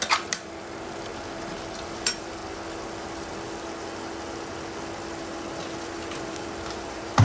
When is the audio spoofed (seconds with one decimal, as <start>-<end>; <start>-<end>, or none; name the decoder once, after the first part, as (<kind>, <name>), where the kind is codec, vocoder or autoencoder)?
0.0-1.1 (vocoder, BigVGAN v2); 1.7-2.4; 5.8-7.2